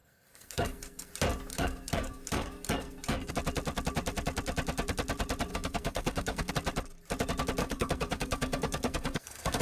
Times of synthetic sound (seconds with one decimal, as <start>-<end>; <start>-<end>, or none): 0.0-1.1; 1.5-3.3; 5.5-6.5; 7.6-9.6